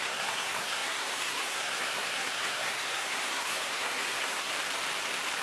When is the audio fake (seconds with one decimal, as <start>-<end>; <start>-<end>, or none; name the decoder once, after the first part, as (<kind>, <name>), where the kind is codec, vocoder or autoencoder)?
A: 0.0-4.5 (codec, SNAC)